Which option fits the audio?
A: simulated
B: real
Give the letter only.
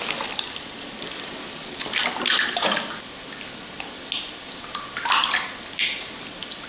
B